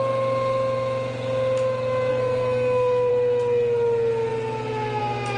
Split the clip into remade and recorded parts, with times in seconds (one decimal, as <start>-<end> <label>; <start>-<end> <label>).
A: 0.0-2.1 recorded; 2.1-3.1 remade; 3.1-5.4 recorded